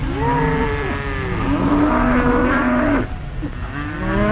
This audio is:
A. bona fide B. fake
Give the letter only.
A